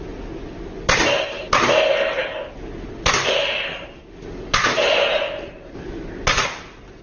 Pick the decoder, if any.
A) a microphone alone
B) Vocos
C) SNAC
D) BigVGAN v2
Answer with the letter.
A